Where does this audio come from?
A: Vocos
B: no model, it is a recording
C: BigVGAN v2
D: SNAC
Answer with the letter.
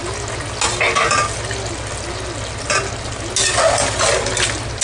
B